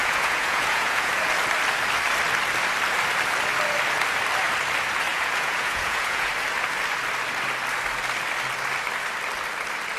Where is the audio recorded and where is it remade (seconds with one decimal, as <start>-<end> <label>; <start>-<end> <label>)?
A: 0.0-1.1 remade; 1.1-5.1 recorded; 5.1-6.3 remade; 6.3-10.0 recorded